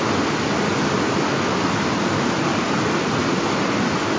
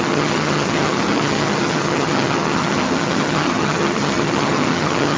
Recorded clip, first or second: first